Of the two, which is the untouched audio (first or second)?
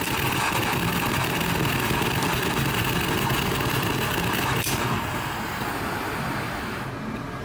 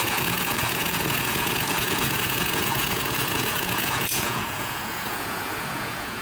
first